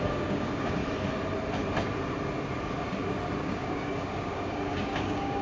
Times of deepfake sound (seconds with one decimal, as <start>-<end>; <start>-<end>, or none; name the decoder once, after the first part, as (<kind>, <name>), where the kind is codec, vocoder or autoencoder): 0.0-0.8 (codec, DAC); 3.4-5.4